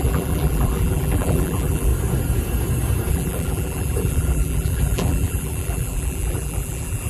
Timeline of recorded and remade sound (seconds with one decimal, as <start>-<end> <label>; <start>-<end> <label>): 0.0-1.9 remade; 1.9-3.1 recorded; 3.1-7.1 remade